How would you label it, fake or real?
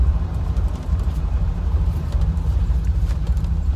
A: fake